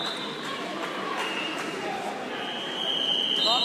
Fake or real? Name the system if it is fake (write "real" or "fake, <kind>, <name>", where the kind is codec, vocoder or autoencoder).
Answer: real